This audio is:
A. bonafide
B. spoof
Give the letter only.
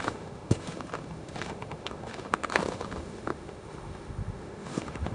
B